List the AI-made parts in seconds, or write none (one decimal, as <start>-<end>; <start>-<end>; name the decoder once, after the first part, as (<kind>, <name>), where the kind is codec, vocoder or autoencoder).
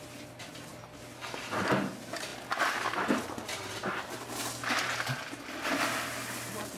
none